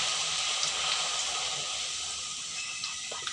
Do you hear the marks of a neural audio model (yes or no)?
no